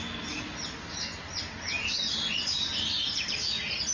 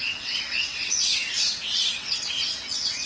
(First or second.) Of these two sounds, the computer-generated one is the second